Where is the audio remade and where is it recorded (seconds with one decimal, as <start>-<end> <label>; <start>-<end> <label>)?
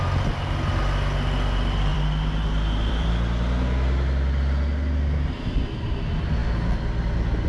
0.0-1.9 recorded; 1.9-3.1 remade; 3.1-7.5 recorded